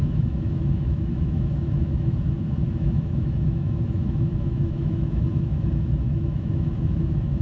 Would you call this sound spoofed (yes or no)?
yes